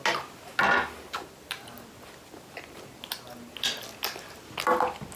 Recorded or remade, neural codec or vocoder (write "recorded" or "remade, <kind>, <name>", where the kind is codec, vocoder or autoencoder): recorded